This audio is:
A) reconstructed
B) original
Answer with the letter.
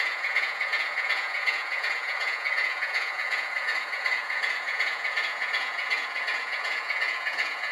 A